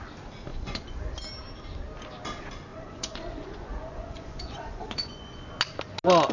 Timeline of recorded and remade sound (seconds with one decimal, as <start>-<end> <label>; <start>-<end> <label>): 0.0-0.5 recorded; 0.5-1.0 remade; 1.0-2.7 recorded; 2.7-5.5 remade; 5.5-6.3 recorded